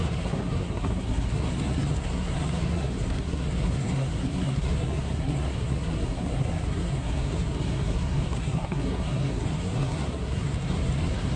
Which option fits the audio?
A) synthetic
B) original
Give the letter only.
A